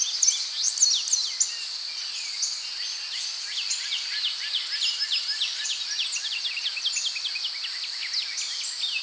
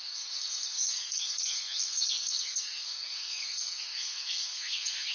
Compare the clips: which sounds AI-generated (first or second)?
second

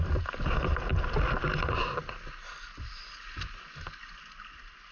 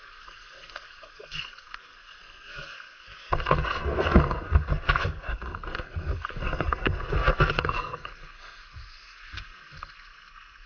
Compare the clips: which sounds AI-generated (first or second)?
second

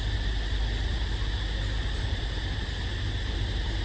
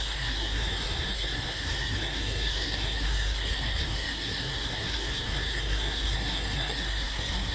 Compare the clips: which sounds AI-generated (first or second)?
second